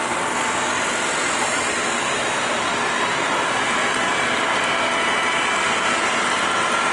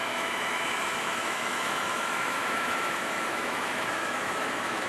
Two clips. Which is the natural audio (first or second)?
first